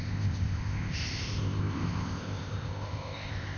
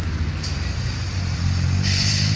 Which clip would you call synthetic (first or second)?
first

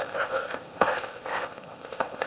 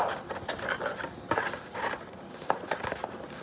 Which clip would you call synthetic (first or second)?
first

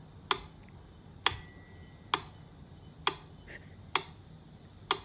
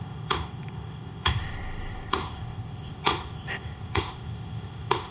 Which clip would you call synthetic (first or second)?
second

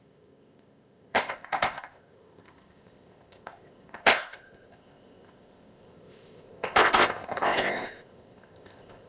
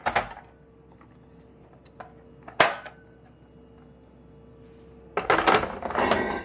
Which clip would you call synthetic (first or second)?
first